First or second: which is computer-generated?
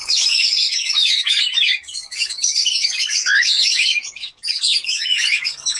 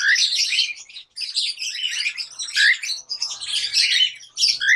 first